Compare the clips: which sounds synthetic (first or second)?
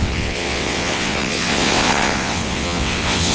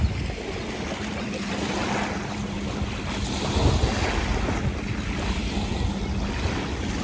first